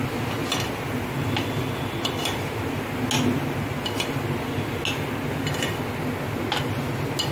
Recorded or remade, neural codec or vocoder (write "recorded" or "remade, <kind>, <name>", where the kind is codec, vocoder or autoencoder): recorded